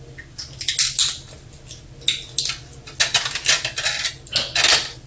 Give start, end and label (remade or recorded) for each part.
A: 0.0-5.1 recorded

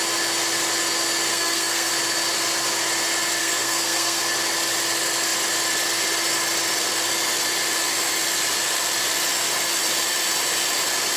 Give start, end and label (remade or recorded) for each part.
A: 0.0-1.3 recorded; 1.3-1.9 remade; 1.9-3.4 recorded; 3.4-4.2 remade; 4.2-11.2 recorded

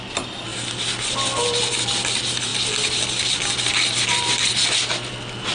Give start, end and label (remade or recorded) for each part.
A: 0.0-5.5 recorded

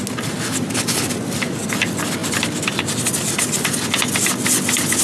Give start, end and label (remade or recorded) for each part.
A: 0.0-5.0 recorded

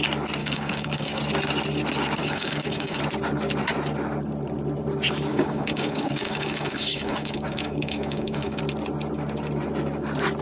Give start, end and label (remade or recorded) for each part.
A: 0.0-0.4 recorded; 0.4-1.2 remade; 1.2-2.2 recorded; 2.2-3.0 remade; 3.0-5.3 recorded; 5.3-8.6 remade; 8.6-10.4 recorded

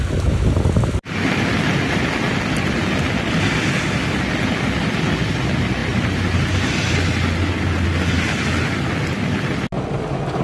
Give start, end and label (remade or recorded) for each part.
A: 0.0-10.4 recorded

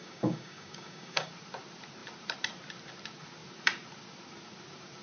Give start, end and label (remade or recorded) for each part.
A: 0.0-1.3 remade; 1.3-5.0 recorded